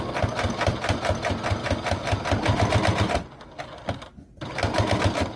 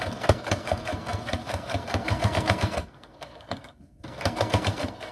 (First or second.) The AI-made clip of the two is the second